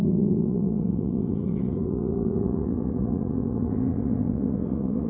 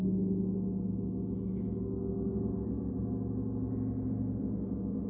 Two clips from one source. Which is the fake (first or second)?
first